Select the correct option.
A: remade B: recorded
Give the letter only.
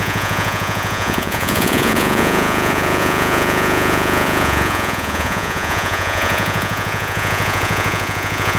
A